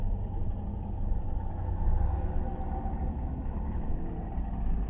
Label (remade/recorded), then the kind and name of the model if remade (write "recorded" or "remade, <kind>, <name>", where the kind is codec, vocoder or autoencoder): recorded